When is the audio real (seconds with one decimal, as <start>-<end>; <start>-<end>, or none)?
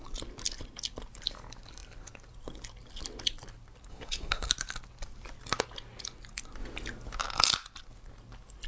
0.0-3.9; 4.5-8.7